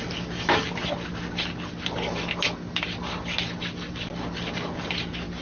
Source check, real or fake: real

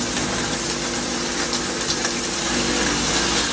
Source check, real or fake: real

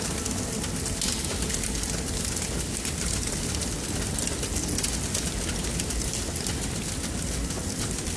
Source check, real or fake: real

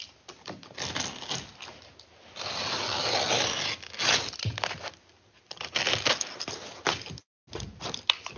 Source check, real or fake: real